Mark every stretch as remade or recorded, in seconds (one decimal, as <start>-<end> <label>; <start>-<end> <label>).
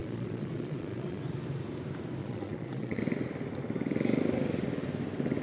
0.0-1.2 remade; 1.2-2.2 recorded; 2.2-3.0 remade; 3.0-5.4 recorded